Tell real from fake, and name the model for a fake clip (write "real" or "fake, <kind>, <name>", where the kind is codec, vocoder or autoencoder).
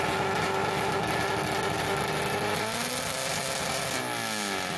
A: real